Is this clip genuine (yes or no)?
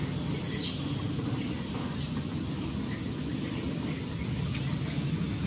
yes